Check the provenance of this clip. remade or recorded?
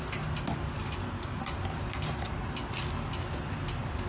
recorded